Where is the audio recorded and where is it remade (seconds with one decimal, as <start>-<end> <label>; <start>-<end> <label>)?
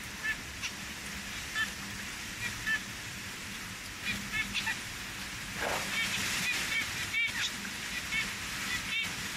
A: 0.0-6.2 recorded; 6.2-6.9 remade; 6.9-9.4 recorded